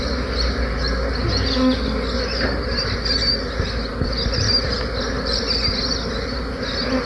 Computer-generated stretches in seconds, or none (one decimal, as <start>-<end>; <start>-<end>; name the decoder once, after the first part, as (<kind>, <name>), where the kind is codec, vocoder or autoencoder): none